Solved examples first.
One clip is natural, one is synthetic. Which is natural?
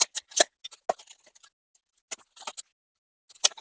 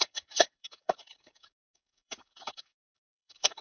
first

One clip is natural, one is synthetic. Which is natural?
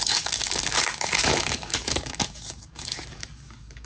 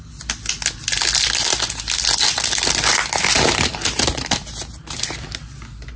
second